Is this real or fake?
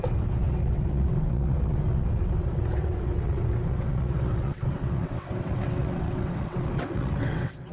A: fake